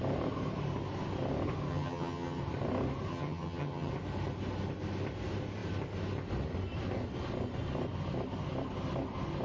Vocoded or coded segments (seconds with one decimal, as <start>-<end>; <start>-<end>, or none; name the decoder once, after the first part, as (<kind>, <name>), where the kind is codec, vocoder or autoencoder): 1.7-2.4 (vocoder, HiFi-GAN); 3.1-3.9